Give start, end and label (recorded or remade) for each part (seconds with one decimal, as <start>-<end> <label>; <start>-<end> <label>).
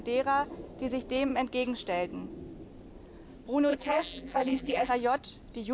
0.0-3.7 recorded; 3.7-4.9 remade; 4.9-5.7 recorded